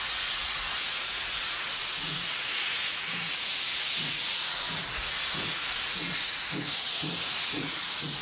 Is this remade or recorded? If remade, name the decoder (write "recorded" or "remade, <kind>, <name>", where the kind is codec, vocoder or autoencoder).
remade, vocoder, Vocos